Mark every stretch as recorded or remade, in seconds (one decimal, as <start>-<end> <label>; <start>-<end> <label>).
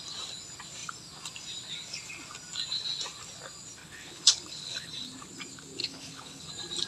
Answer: 0.0-3.8 recorded; 3.8-4.9 remade; 4.9-5.8 recorded; 5.8-6.5 remade; 6.5-6.9 recorded